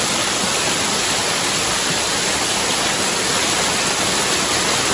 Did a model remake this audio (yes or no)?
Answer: no